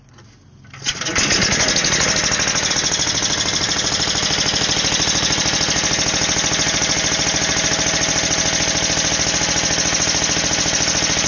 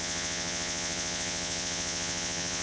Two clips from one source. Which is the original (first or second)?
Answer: first